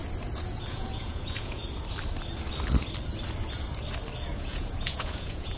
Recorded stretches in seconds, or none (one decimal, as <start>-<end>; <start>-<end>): 0.0-0.7; 1.6-4.4